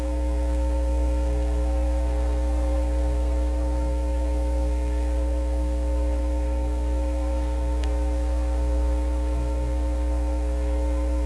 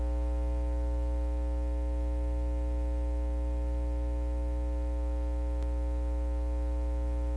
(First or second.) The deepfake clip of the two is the first